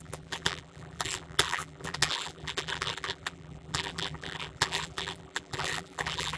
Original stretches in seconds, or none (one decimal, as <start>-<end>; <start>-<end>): none